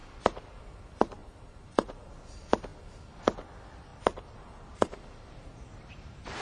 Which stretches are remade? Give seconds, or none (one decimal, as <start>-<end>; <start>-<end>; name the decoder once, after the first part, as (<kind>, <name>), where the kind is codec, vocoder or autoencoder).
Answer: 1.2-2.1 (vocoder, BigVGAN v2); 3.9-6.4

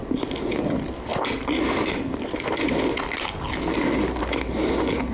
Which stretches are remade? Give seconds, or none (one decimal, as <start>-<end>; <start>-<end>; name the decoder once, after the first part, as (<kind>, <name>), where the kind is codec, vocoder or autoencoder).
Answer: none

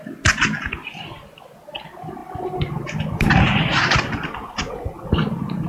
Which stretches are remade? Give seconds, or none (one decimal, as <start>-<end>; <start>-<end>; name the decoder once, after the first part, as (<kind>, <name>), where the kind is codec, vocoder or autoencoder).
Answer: 2.2-5.7 (vocoder, BigVGAN v2)